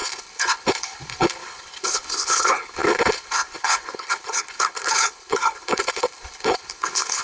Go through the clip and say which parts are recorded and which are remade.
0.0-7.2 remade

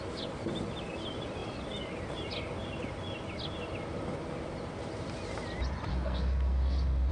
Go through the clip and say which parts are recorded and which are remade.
0.0-5.9 recorded; 5.9-7.1 remade

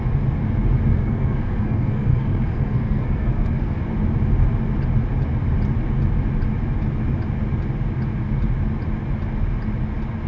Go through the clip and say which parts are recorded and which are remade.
0.0-0.9 recorded; 0.9-3.8 remade; 3.8-10.3 recorded

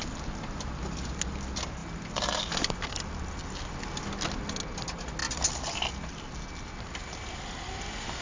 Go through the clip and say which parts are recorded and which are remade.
0.0-8.2 recorded

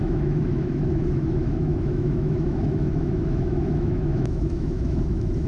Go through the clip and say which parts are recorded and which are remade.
0.0-5.5 remade